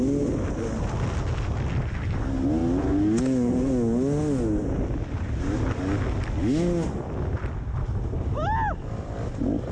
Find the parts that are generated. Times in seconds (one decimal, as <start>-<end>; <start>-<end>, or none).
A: none

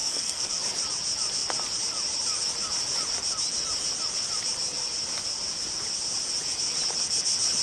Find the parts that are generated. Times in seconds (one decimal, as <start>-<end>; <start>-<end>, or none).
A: 0.0-0.6

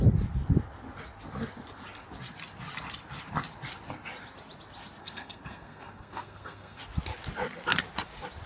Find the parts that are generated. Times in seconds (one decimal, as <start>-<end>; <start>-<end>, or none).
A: 5.0-6.8